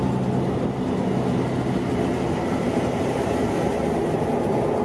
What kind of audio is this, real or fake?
real